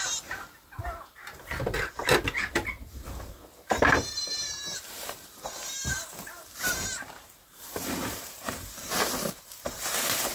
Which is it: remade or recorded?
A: remade